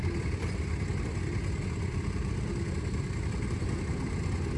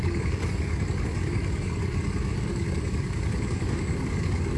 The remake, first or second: second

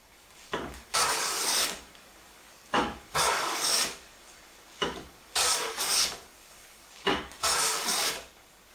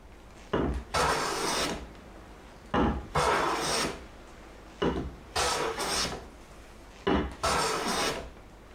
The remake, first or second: first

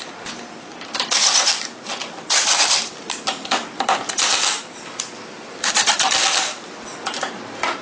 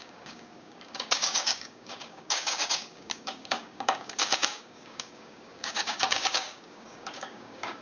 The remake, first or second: second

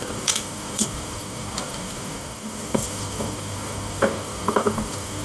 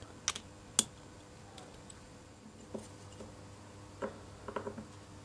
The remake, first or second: first